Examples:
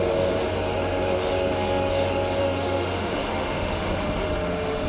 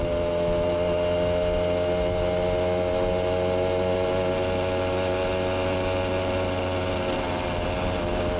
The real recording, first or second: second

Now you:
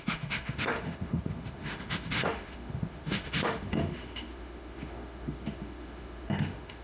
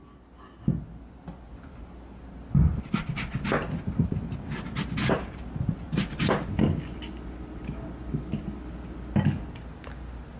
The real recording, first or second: second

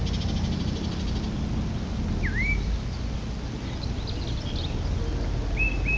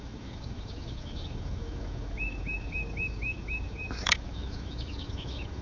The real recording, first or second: first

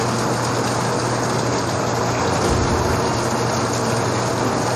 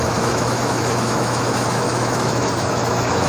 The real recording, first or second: first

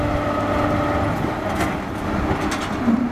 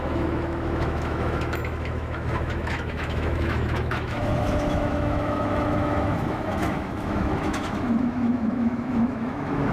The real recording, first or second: first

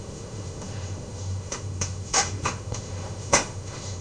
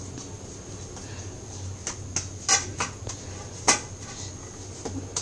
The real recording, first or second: second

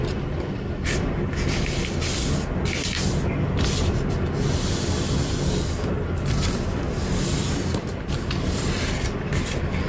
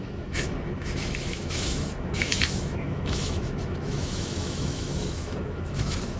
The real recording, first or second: first